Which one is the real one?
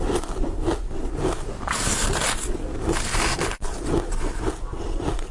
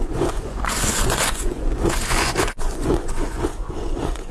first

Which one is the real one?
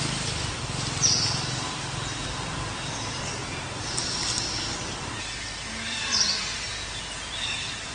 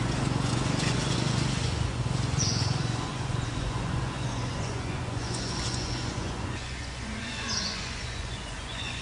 first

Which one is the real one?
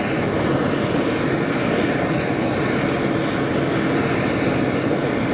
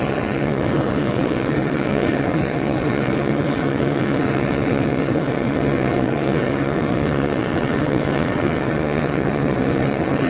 first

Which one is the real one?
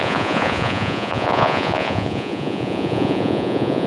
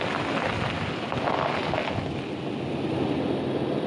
second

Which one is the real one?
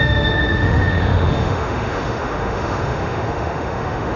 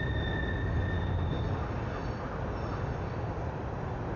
second